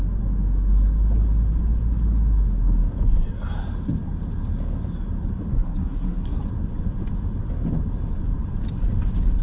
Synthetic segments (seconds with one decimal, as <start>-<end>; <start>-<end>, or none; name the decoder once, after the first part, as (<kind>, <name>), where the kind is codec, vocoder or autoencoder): 5.5-6.4 (codec, SNAC)